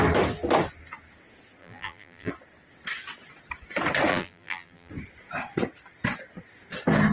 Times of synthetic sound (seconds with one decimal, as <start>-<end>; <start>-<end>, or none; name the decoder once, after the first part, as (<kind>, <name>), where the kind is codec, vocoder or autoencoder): 1.6-2.3 (vocoder, BigVGAN v2); 4.1-4.9

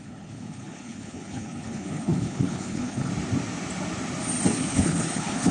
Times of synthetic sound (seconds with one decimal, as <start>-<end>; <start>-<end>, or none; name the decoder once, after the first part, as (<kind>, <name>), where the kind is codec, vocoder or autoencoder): 0.0-3.1 (codec, HILCodec); 4.5-5.5

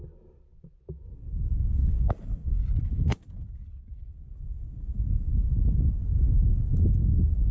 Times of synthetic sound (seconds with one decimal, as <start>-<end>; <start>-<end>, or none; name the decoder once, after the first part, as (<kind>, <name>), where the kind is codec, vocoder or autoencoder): none

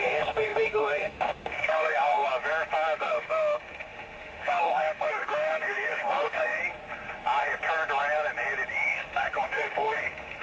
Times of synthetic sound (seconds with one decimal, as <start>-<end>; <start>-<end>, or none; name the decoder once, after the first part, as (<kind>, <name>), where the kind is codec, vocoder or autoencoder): 0.0-2.3 (autoencoder, DAC-VAE); 3.0-6.6; 8.7-10.4